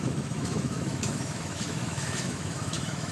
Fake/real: fake